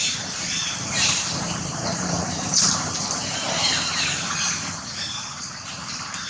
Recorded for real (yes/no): no